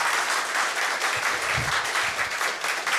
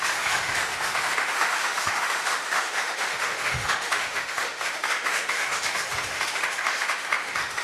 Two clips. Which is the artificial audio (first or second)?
second